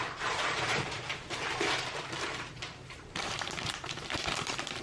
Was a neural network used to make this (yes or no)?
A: yes